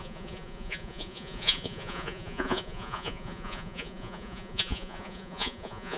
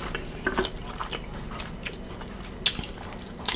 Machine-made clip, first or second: first